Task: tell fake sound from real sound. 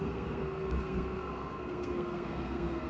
fake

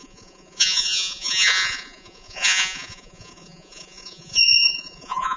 fake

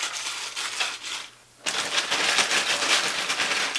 real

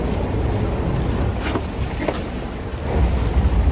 real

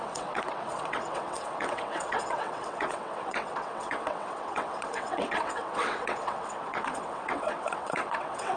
fake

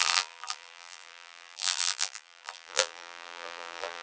fake